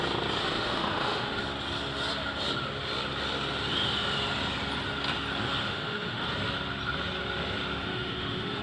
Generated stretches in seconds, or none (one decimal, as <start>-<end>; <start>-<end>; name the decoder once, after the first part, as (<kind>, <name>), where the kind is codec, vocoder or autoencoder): 0.4-1.4 (autoencoder, DAC-VAE); 5.6-6.2; 7.8-8.6